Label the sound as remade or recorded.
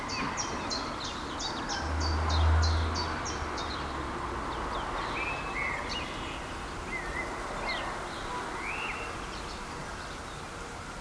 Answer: recorded